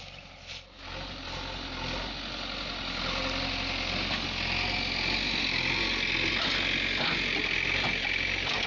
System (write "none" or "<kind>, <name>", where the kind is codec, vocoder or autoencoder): none